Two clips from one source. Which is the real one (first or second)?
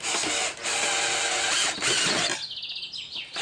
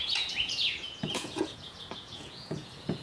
first